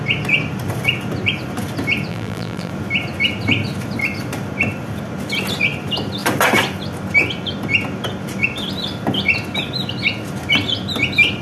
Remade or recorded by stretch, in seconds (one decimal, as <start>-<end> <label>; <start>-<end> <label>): 0.0-2.1 recorded; 2.1-2.7 remade; 2.7-11.4 recorded